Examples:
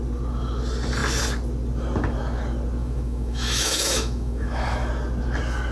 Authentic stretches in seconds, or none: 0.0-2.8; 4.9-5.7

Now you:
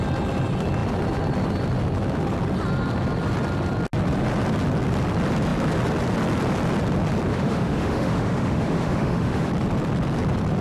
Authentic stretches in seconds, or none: 0.0-7.3; 9.5-10.6

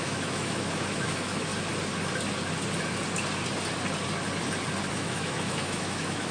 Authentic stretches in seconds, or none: 1.5-4.9

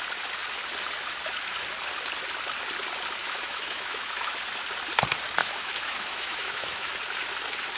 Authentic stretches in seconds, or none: 0.0-3.2; 4.3-5.4; 6.9-7.8

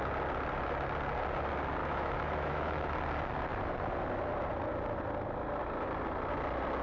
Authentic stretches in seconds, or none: 0.0-1.8; 2.9-6.8

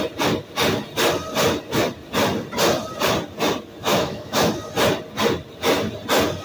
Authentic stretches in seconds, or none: 0.0-3.9; 4.5-6.4

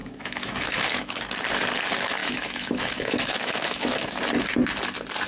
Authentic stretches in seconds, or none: 1.2-2.2; 4.2-5.3

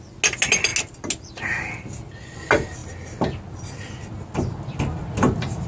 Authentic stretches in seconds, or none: 0.0-5.7